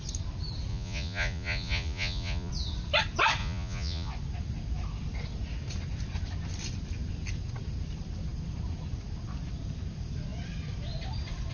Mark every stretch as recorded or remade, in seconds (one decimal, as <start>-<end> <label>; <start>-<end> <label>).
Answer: 0.0-0.7 recorded; 0.7-2.5 remade; 2.5-3.4 recorded; 3.4-4.1 remade; 4.1-11.5 recorded